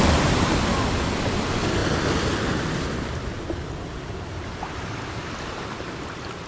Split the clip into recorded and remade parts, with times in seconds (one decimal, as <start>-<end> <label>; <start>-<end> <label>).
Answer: 0.0-6.5 recorded